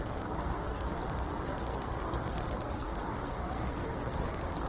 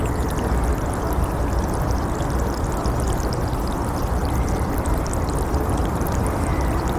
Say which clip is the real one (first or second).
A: second